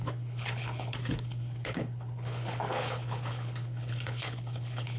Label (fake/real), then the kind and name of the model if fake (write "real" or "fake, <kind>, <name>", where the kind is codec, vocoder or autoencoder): fake, codec, HILCodec